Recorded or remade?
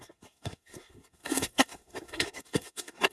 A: remade